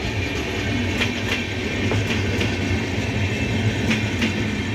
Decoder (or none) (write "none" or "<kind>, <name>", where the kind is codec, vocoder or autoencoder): none